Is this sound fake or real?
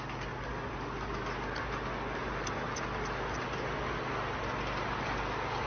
real